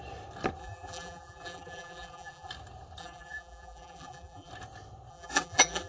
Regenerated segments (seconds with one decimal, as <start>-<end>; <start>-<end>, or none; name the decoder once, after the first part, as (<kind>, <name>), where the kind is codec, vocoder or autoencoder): 0.6-2.5 (vocoder, BigVGAN v2); 3.0-4.5; 5.1-5.9